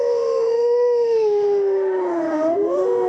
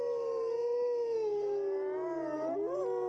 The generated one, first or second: first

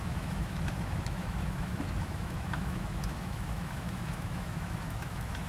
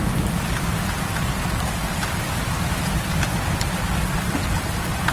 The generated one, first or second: first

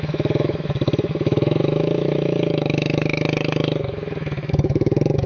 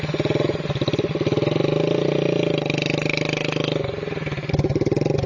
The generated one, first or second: first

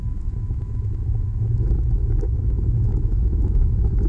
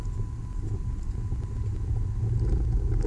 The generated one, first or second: first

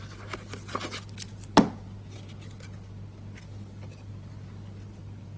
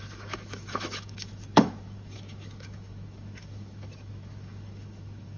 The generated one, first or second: second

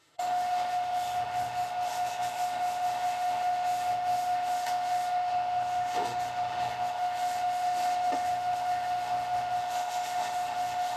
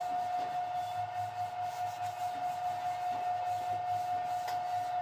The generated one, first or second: first